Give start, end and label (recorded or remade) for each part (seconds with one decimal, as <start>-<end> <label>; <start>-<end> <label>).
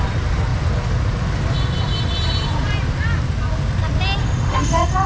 0.0-4.2 recorded; 4.2-5.1 remade